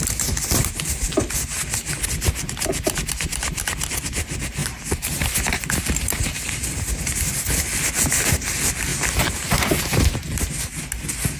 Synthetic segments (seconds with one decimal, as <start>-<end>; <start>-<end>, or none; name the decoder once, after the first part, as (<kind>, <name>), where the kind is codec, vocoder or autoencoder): 2.7-4.0 (vocoder, BigVGAN v2)